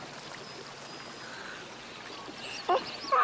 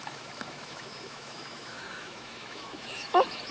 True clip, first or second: first